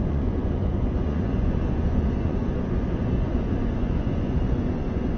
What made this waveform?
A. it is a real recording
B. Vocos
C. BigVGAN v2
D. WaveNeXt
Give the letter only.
B